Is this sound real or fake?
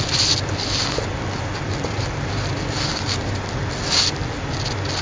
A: real